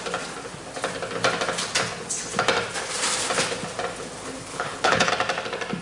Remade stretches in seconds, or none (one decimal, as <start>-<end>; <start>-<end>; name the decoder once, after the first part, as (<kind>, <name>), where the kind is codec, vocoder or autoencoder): 4.5-5.1 (codec, HILCodec)